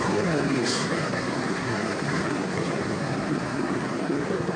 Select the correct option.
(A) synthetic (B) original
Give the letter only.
A